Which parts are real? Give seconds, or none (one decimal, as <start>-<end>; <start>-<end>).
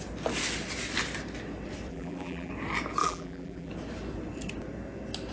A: 0.0-1.9; 2.5-3.0; 3.7-5.3